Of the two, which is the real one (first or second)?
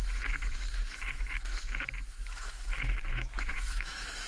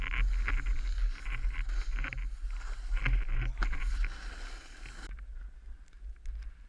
second